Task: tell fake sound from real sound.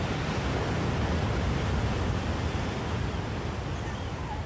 real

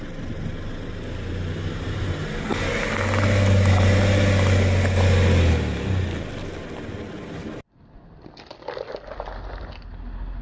real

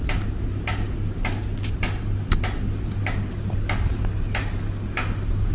real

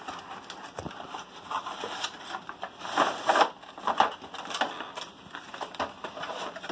real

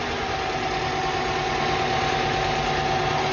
real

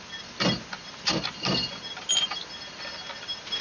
real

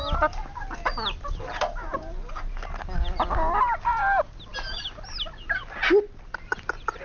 real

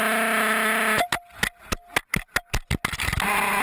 real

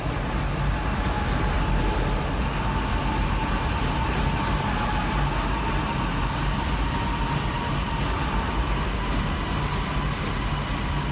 real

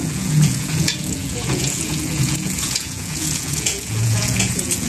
fake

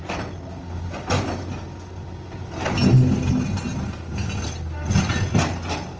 real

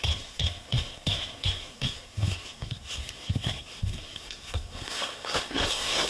fake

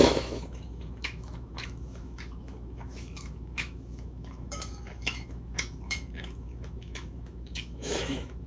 fake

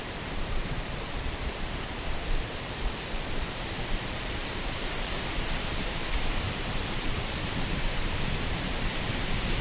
fake